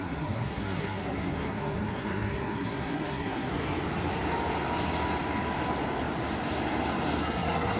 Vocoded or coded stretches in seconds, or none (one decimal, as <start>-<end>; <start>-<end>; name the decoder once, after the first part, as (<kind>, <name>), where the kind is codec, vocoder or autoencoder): 0.0-3.5 (codec, SNAC); 7.2-7.8